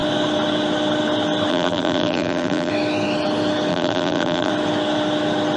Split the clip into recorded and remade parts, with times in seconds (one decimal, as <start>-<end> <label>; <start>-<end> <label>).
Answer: 0.0-1.5 recorded; 1.5-2.7 remade; 2.7-3.7 recorded; 3.7-4.5 remade; 4.5-5.6 recorded